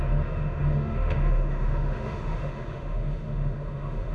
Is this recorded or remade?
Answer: remade